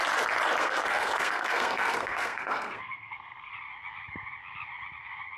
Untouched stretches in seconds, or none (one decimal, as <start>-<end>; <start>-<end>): 0.0-0.6; 3.5-5.4